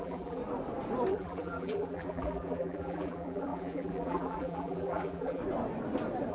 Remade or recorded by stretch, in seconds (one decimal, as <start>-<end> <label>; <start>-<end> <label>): 0.0-0.4 remade; 0.4-1.1 recorded; 1.1-5.4 remade; 5.4-6.3 recorded